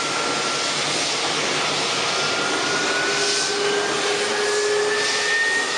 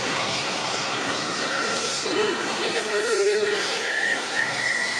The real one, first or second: first